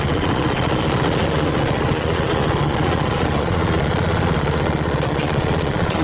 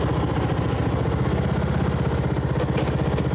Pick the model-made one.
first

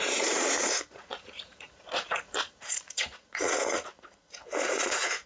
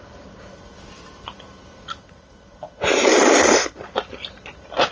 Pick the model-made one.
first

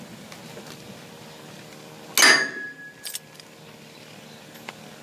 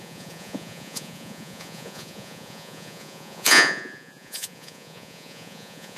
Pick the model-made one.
second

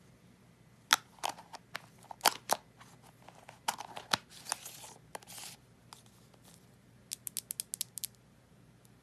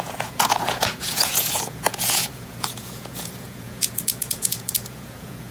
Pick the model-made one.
second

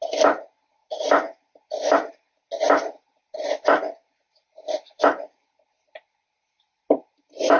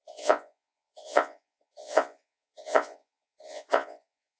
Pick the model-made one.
second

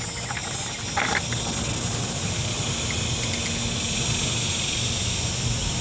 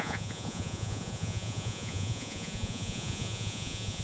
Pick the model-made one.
second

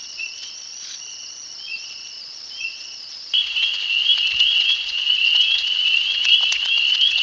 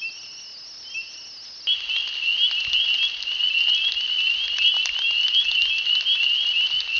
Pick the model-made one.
first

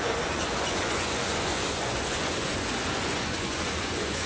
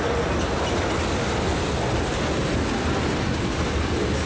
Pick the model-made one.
first